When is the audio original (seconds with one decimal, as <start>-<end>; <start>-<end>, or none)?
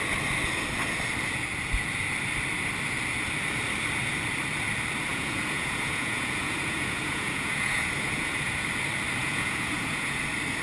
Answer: 0.0-5.1; 8.7-9.2; 10.2-10.6